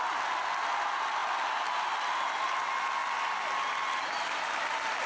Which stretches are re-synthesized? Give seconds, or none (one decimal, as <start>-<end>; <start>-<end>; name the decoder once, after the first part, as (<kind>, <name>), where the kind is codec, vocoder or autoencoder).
none

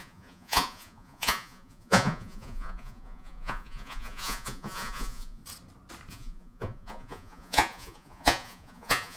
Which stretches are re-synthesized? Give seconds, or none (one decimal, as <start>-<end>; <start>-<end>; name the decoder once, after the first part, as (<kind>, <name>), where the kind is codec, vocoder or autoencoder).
0.0-5.4 (vocoder, Vocos); 6.1-9.2

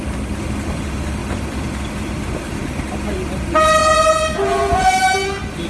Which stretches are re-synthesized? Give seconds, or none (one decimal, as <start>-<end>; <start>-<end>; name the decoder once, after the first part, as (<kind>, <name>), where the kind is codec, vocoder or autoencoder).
3.8-4.9 (vocoder, Vocos)

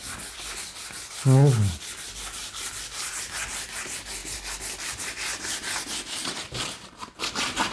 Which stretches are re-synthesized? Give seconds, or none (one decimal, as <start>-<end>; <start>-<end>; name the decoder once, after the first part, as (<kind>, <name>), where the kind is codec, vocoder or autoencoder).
none

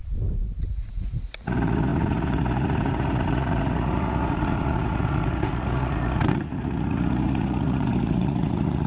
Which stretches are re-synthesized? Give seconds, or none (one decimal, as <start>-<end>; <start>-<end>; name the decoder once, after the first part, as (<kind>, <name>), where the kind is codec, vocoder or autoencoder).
0.7-8.9 (vocoder, Vocos)